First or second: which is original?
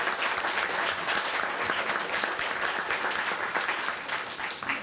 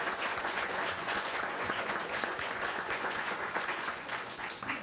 first